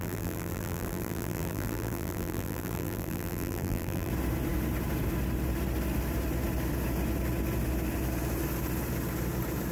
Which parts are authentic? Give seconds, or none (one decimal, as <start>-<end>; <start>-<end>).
4.1-9.7